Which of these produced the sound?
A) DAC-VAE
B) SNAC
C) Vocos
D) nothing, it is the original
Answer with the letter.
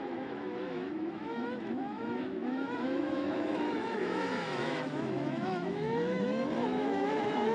A